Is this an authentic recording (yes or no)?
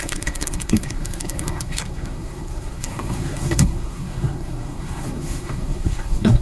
no